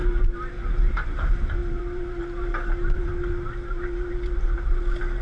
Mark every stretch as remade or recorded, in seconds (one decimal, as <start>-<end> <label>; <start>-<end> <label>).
0.0-3.1 remade; 3.1-3.7 recorded; 3.7-4.8 remade; 4.8-5.2 recorded